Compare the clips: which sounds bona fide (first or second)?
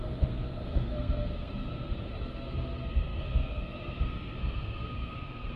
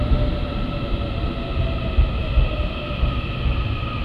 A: second